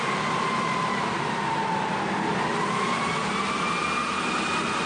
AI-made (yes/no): no